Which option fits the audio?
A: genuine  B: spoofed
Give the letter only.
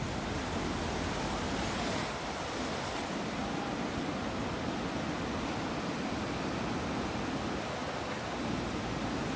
A